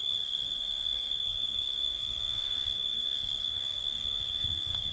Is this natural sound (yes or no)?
no